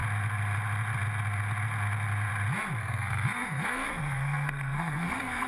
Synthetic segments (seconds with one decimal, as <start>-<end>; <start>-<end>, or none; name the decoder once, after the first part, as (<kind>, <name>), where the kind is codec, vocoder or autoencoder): 2.8-5.5 (codec, SNAC)